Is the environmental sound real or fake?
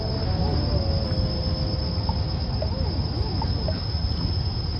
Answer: real